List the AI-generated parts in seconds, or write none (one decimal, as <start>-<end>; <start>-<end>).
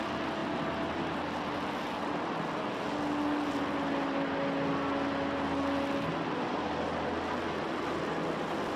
none